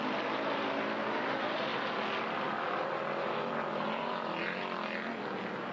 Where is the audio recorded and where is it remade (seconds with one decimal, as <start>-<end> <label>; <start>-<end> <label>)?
0.0-5.7 recorded